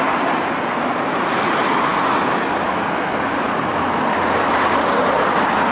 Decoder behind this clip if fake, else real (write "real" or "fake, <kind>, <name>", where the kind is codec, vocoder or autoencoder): real